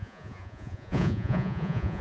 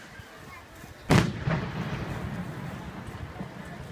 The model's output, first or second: first